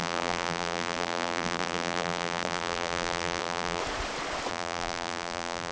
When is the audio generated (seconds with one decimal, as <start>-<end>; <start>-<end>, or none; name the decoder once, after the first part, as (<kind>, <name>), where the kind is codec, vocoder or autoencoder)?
0.0-3.8 (vocoder, BigVGAN v2); 4.5-5.7